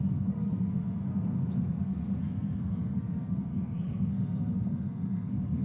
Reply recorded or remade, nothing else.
remade